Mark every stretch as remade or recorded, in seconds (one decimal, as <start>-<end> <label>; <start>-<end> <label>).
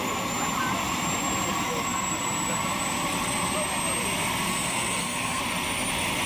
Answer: 0.0-4.5 recorded; 4.5-5.4 remade; 5.4-6.3 recorded